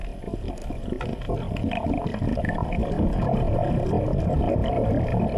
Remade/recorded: remade